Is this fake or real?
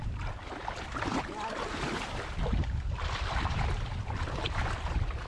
fake